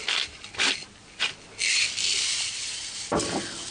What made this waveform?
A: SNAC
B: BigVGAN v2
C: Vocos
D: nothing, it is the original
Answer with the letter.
D